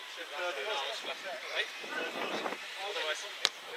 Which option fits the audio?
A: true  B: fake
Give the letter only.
B